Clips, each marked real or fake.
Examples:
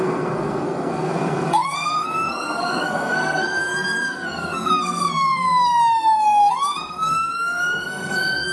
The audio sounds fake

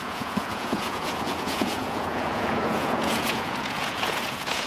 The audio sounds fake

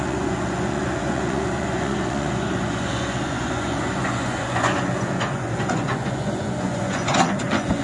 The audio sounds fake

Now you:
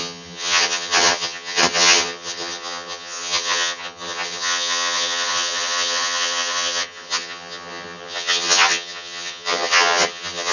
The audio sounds fake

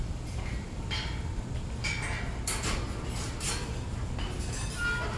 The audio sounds real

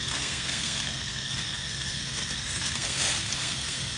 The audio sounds fake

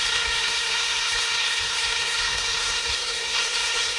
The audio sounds fake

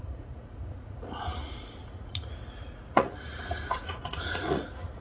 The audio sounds fake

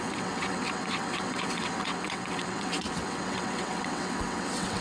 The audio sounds fake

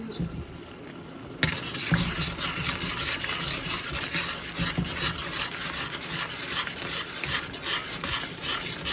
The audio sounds real